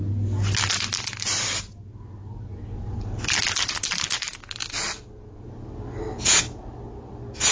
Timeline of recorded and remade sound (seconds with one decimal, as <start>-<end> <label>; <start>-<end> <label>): 0.0-7.5 recorded